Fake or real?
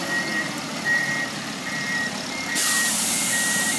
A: fake